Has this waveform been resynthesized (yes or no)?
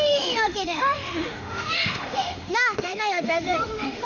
yes